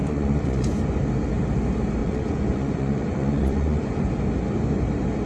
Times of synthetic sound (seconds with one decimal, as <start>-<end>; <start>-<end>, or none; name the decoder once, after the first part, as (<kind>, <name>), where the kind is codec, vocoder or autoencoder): 0.0-0.8 (vocoder, Vocos); 2.0-4.1